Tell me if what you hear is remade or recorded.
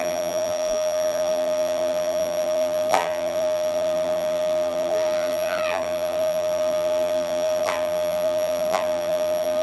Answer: remade